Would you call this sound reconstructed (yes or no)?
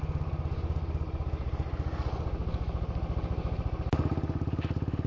no